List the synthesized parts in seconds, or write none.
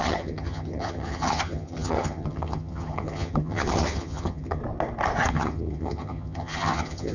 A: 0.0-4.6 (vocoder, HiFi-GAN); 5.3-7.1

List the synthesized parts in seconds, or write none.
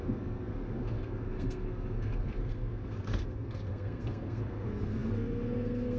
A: 0.0-6.0 (codec, SNAC)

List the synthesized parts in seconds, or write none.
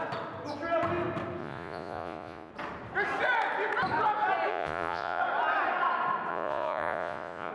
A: 1.4-2.5 (vocoder, Vocos); 4.5-5.2; 6.3-7.5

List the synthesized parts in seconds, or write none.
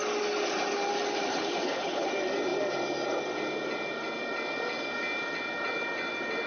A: 1.3-2.1 (codec, HILCodec)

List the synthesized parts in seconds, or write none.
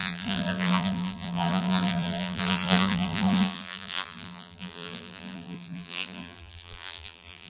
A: 0.0-7.5 (vocoder, BigVGAN v2)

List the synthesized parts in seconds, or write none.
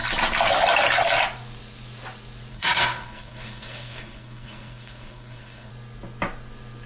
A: 2.5-5.7 (codec, SNAC)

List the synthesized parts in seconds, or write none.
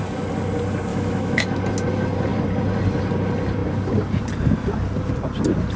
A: 0.9-1.6 (autoencoder, DAC-VAE)